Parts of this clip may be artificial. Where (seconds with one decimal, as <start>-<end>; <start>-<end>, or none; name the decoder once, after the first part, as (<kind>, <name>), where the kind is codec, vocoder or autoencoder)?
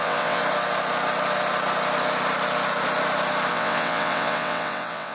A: 0.0-0.4 (vocoder, WaveNeXt); 3.5-5.1